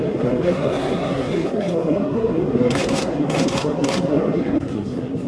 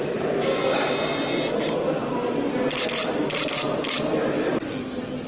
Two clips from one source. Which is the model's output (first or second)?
first